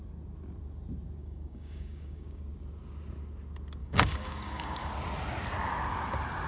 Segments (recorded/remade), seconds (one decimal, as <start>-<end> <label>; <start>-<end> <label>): 0.0-1.2 recorded; 1.2-2.4 remade; 2.4-3.8 recorded; 3.8-4.9 remade; 4.9-6.5 recorded

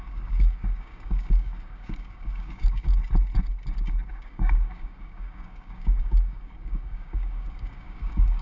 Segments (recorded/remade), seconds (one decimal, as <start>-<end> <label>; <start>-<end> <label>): 0.0-2.9 remade; 2.9-4.1 recorded; 4.1-8.4 remade